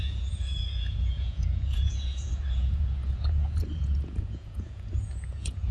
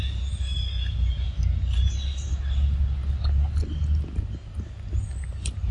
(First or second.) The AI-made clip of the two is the first